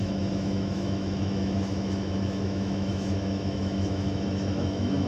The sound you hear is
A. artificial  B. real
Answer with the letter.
A